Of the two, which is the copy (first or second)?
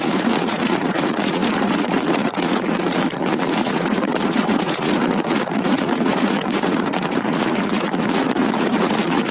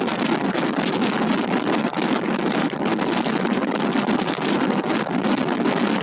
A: first